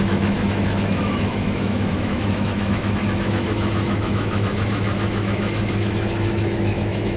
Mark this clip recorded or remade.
remade